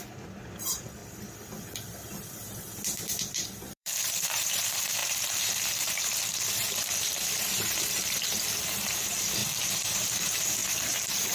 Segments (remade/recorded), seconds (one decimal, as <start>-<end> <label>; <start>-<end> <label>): 0.0-1.0 remade; 1.0-3.3 recorded; 3.3-11.3 remade